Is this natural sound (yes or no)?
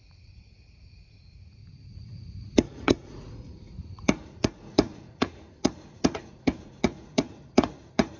no